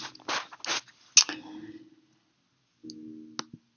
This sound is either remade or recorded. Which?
recorded